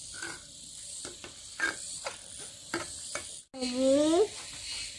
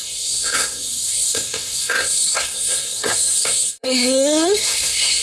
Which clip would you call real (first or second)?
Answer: first